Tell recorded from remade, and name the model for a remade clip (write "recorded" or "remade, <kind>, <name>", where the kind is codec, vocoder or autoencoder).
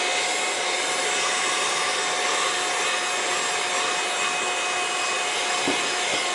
recorded